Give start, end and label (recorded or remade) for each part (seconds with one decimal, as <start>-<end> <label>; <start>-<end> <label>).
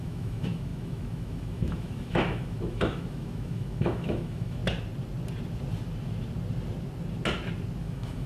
0.0-4.6 remade; 4.6-7.8 recorded; 7.8-8.3 remade